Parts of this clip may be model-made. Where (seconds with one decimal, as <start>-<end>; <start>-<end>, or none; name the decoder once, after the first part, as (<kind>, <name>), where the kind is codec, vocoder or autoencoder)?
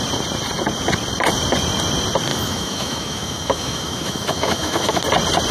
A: 2.3-5.0 (autoencoder, DAC-VAE)